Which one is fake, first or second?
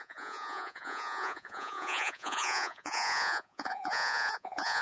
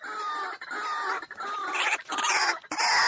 first